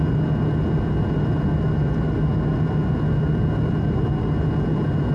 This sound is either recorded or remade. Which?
recorded